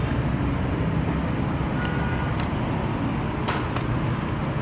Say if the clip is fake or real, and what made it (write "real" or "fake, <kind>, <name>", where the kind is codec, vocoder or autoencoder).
real